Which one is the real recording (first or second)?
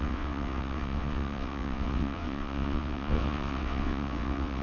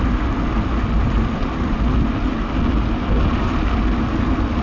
second